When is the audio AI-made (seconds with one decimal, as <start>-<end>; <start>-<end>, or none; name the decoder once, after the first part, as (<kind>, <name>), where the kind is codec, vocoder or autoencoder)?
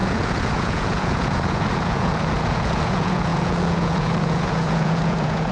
0.0-5.5 (vocoder, Vocos)